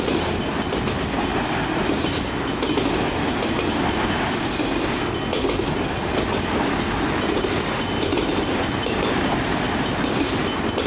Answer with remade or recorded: recorded